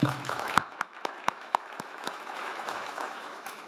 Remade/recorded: remade